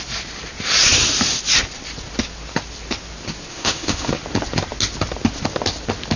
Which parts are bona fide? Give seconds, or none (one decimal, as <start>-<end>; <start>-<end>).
0.0-3.5; 4.1-6.2